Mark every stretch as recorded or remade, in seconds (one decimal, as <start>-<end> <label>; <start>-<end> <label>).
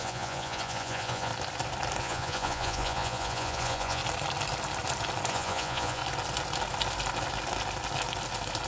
0.0-1.3 remade; 1.3-2.0 recorded; 2.0-4.0 remade; 4.0-5.3 recorded; 5.3-6.0 remade; 6.0-8.7 recorded